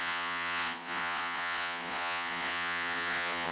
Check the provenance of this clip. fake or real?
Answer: fake